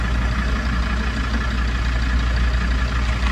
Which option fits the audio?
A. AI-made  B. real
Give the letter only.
B